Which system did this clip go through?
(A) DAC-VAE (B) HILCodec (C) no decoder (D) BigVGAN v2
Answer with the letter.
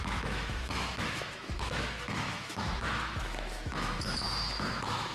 A